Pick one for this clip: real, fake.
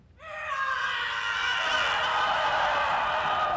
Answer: fake